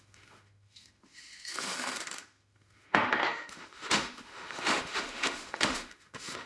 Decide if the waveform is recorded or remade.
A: remade